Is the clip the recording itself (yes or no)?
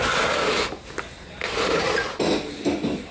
yes